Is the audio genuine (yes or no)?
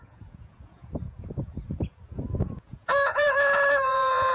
no